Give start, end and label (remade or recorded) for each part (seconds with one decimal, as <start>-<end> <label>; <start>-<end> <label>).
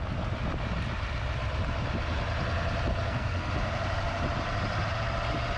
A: 0.0-2.9 recorded; 2.9-3.5 remade; 3.5-5.6 recorded